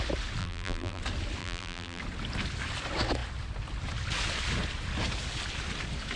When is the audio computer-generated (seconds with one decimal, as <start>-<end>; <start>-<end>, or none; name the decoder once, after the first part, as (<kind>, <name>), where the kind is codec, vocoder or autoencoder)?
0.4-1.0 (vocoder, BigVGAN v2); 1.4-2.0